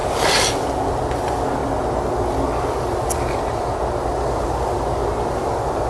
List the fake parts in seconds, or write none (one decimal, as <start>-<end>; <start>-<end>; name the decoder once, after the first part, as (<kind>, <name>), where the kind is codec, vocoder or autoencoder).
none